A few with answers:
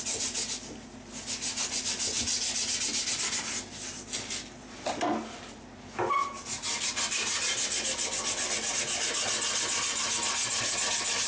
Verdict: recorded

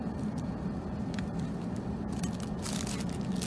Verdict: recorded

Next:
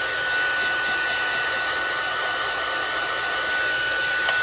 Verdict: recorded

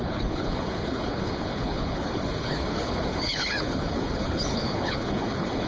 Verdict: remade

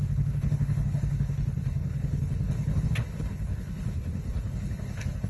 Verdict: remade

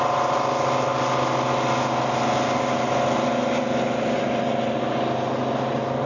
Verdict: recorded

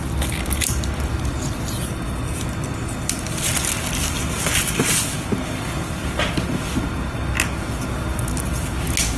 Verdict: recorded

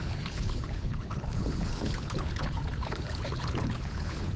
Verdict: remade